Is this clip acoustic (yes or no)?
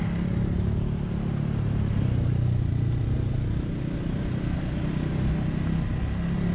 yes